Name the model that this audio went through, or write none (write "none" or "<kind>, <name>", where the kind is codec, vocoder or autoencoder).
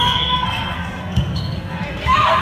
codec, SNAC